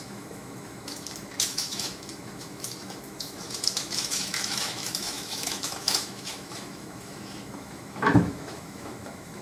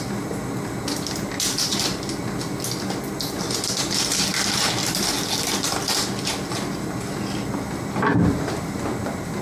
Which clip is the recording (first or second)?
second